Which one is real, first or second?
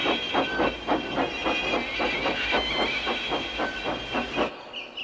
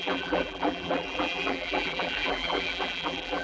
first